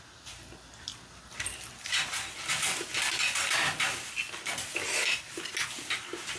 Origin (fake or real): real